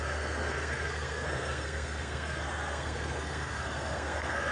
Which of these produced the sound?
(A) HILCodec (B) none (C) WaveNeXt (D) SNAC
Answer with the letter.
D